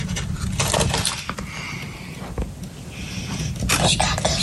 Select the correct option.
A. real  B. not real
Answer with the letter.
A